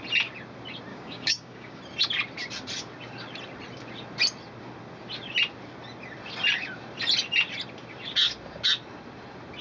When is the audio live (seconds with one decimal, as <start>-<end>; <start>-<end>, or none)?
0.0-0.9; 1.8-9.6